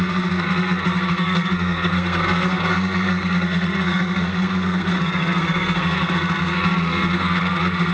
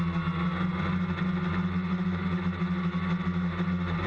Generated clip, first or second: first